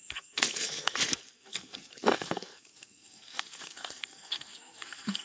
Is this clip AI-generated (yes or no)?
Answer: yes